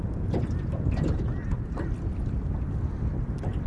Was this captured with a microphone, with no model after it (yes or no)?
yes